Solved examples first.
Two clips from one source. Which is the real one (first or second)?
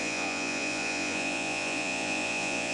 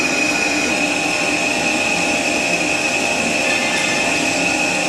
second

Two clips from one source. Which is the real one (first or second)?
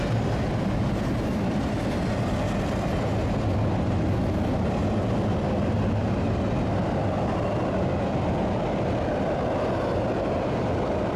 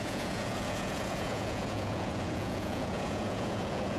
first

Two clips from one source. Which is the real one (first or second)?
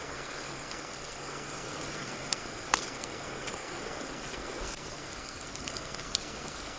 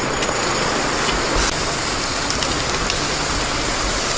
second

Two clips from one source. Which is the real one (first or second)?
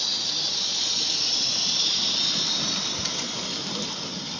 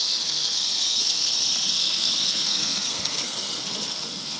first